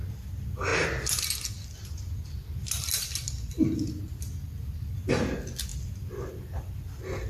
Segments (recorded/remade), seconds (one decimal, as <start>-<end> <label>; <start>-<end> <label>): 0.0-7.3 recorded